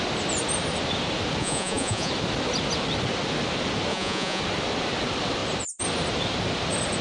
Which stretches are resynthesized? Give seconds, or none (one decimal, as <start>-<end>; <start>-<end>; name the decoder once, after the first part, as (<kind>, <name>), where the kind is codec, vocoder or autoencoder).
1.4-2.1 (vocoder, Vocos); 3.9-4.4